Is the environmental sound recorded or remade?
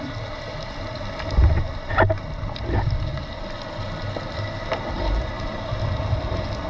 recorded